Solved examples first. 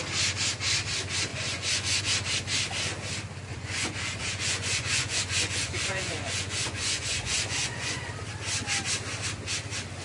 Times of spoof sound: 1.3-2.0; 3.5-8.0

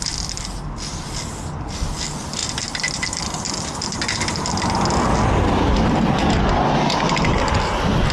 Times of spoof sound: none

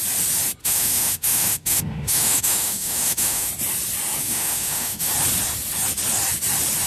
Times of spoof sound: 0.6-3.5; 4.2-5.1

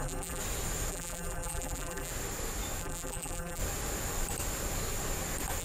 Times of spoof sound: 0.0-0.4; 0.9-2.1; 2.8-3.6